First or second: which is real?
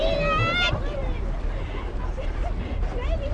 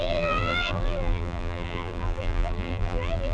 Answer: first